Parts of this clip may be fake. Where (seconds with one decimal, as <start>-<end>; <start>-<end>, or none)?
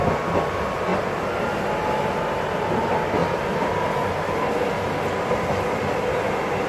none